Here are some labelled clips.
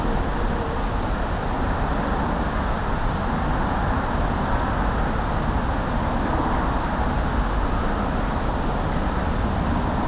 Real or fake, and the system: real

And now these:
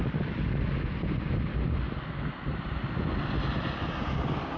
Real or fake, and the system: real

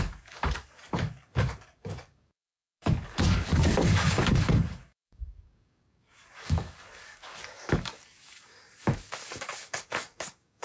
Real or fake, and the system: fake, codec, DAC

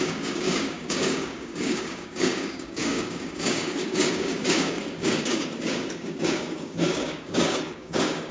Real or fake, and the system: fake, codec, DAC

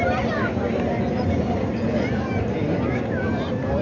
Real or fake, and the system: real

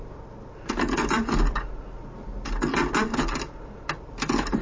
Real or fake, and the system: real